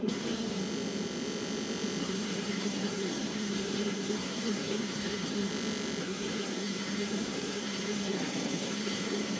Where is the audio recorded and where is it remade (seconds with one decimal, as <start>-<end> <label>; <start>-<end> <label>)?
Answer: 0.0-0.6 remade; 0.6-2.0 recorded; 2.0-5.5 remade; 5.5-6.0 recorded; 6.0-9.4 remade